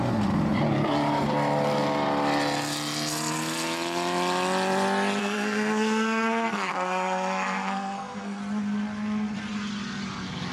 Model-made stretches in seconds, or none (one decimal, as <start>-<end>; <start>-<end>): 5.2-8.4